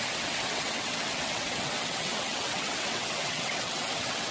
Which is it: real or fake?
fake